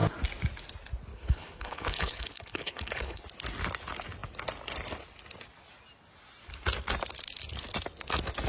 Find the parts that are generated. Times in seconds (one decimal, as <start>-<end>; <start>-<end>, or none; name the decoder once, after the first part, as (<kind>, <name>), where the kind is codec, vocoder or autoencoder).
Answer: 1.1-3.2 (codec, HILCodec)